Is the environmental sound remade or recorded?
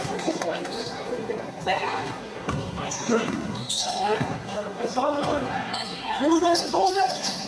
remade